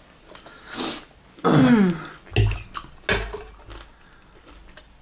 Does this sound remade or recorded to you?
recorded